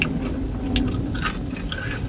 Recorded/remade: recorded